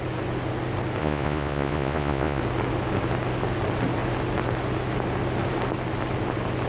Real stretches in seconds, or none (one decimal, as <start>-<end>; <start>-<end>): 0.0-1.0; 2.4-6.7